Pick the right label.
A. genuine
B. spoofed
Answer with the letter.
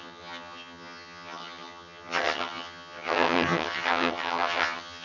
B